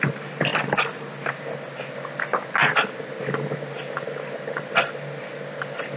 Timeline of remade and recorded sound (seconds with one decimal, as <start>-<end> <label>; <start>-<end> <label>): 0.0-6.0 recorded